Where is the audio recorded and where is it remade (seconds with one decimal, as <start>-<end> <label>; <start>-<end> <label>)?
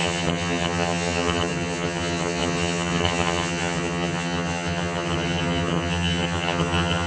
0.0-7.1 remade